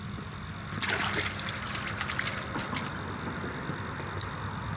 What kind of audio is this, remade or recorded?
recorded